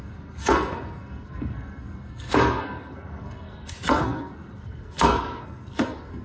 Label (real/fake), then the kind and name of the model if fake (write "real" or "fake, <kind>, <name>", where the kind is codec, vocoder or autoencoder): fake, codec, SNAC